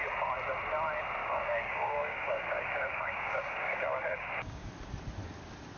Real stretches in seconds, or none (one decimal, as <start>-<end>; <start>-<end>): 0.0-1.2; 4.7-5.8